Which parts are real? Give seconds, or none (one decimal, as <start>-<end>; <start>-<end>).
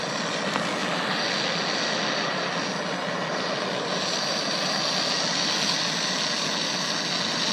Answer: 0.0-7.5